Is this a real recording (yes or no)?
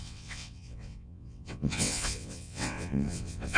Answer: no